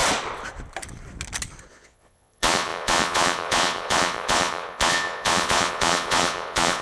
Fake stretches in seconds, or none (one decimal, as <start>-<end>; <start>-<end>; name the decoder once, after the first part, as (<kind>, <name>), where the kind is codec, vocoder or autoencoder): 1.7-6.8 (vocoder, Vocos)